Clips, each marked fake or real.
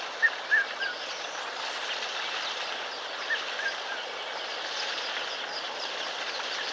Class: real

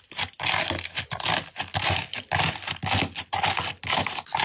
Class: real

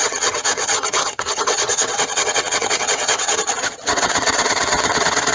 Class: fake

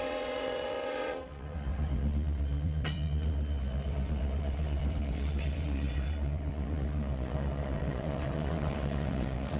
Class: fake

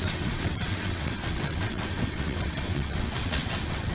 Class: fake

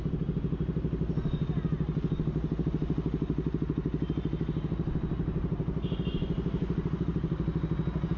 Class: real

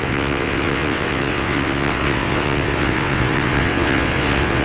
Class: fake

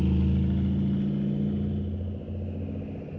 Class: real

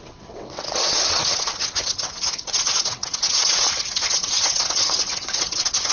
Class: fake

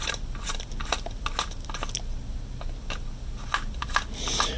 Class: real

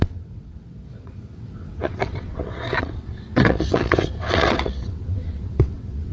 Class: fake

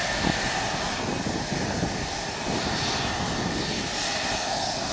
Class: real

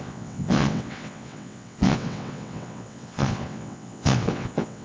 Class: fake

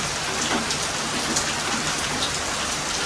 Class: real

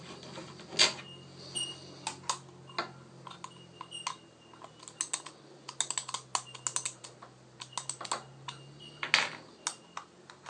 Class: real